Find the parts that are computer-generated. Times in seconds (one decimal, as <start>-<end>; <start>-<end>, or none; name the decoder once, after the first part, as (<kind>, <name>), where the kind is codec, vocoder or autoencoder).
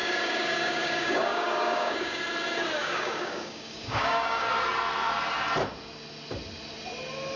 0.0-2.2 (codec, DAC); 2.8-4.5